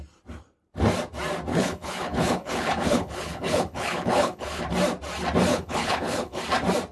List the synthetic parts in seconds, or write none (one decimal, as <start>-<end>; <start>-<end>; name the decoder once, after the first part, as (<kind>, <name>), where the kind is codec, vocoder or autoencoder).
1.5-4.6 (codec, HILCodec); 5.5-6.4